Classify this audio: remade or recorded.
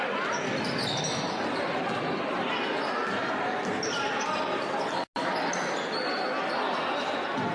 recorded